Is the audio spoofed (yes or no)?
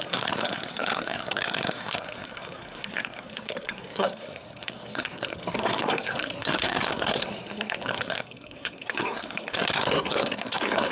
yes